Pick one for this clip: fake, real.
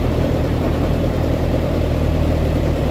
fake